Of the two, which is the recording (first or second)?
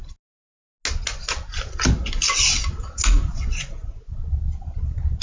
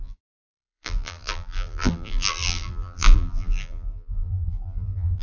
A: first